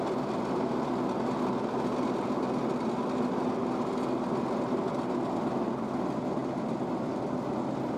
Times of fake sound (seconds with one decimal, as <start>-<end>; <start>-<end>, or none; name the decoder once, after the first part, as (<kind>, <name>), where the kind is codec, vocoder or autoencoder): none

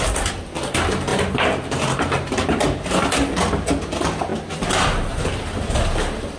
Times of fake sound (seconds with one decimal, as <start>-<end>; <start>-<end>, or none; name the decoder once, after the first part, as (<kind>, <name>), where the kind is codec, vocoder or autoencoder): none

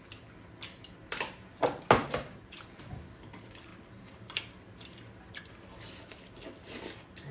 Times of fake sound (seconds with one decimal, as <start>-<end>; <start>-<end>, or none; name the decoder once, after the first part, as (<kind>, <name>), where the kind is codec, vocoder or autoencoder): 2.0-2.6 (vocoder, BigVGAN v2); 3.7-5.3

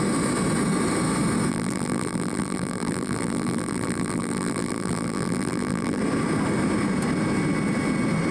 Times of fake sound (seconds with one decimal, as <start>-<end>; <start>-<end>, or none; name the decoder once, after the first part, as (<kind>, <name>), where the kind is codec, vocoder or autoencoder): 1.5-6.0 (vocoder, BigVGAN v2)

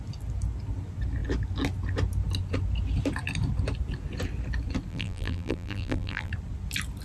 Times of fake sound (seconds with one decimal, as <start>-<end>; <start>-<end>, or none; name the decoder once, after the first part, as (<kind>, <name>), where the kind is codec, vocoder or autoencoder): 4.9-6.3 (vocoder, BigVGAN v2)

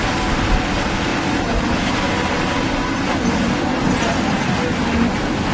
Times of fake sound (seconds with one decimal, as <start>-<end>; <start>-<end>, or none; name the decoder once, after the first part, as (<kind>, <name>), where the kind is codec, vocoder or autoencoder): 1.1-4.4 (vocoder, BigVGAN v2)

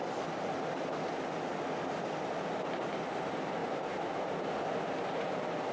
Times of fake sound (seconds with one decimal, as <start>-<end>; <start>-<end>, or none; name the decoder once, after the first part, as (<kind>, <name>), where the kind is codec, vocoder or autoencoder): 3.6-4.3 (vocoder, BigVGAN v2)